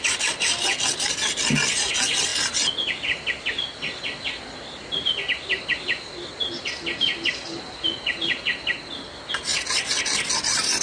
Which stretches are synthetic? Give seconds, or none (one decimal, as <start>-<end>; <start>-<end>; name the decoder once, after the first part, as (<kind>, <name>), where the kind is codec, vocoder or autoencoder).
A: none